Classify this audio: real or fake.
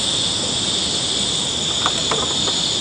real